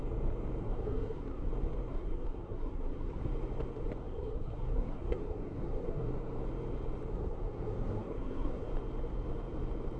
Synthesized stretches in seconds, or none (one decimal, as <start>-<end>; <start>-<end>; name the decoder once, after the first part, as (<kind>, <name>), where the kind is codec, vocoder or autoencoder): 0.6-1.5 (codec, SNAC); 1.9-3.3; 4.0-6.1; 7.1-8.7